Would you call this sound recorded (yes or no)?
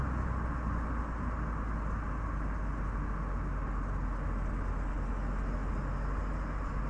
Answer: yes